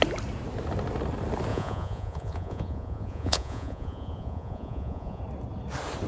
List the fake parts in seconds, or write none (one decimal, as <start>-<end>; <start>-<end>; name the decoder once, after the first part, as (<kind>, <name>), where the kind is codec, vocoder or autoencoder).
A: 1.5-5.2 (vocoder, Vocos)